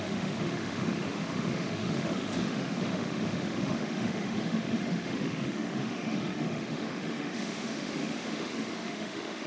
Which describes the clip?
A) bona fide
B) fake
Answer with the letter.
B